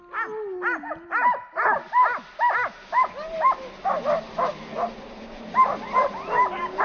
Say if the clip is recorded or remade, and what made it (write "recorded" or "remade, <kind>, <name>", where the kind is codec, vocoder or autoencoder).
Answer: recorded